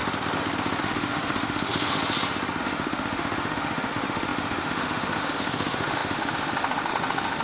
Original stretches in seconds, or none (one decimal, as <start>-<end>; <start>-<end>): 0.0-0.8; 2.0-2.6